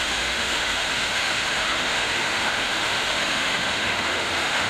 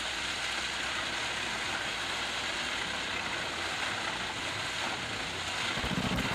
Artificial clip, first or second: first